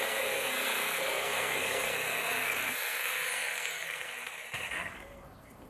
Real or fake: fake